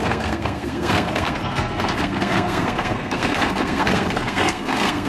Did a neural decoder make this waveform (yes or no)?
yes